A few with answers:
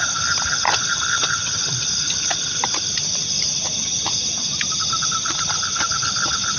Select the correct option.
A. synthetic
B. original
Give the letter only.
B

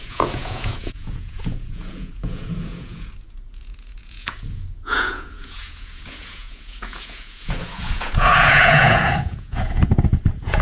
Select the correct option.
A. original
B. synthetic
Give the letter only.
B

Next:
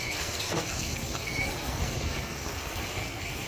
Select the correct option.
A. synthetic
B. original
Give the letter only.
A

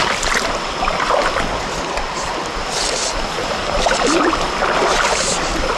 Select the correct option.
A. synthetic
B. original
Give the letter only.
B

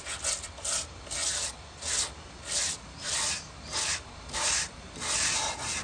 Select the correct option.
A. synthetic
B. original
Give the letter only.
B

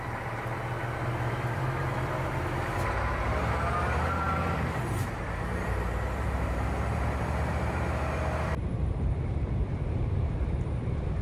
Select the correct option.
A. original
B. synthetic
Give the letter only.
B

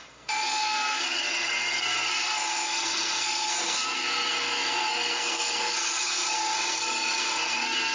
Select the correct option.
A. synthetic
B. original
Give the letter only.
A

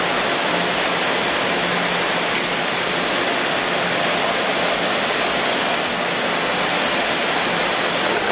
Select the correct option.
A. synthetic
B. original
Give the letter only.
B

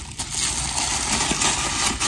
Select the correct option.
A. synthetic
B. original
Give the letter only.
B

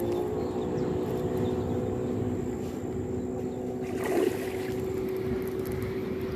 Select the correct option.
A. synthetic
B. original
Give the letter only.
B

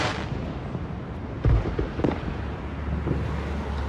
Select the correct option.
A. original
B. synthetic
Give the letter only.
A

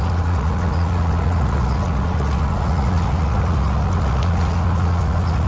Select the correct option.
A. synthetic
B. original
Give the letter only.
A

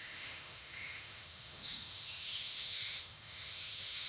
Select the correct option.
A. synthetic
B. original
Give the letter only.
A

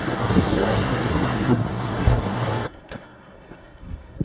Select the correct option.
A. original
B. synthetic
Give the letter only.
B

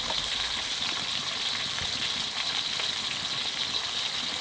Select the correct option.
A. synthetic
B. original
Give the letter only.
B